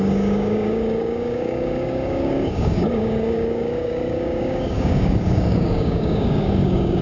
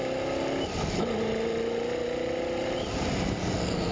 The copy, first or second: first